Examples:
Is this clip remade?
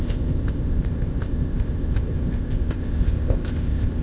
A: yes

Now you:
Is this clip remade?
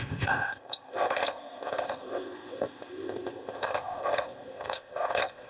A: yes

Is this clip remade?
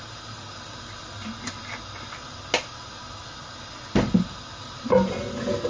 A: no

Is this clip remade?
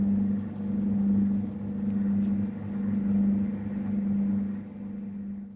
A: no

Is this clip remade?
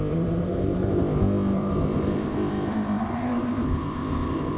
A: yes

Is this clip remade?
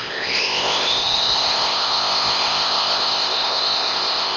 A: yes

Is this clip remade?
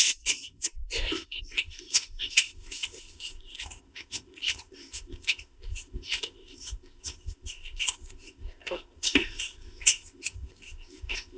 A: yes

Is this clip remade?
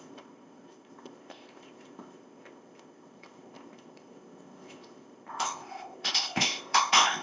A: yes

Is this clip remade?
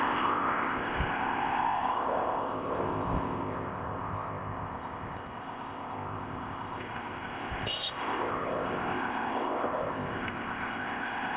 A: yes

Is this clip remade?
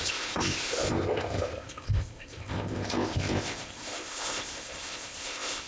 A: yes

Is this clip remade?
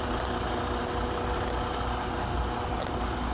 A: no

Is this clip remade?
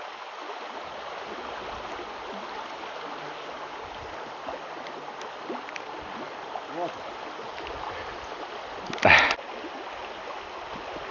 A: no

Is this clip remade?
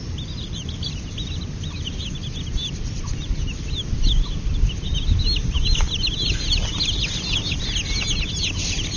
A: no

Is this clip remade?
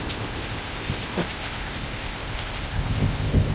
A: yes